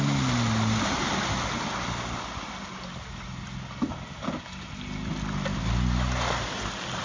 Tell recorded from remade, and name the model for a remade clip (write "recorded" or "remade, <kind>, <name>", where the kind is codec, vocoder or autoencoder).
recorded